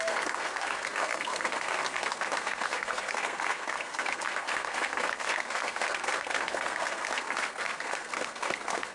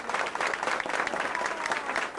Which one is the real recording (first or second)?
second